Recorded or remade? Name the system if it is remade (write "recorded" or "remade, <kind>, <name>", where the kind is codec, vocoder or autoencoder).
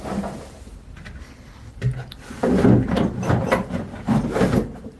recorded